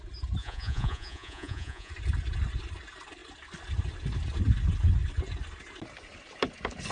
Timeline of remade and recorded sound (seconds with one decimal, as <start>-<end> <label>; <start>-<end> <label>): 0.0-0.4 recorded; 0.4-1.9 remade; 1.9-6.9 recorded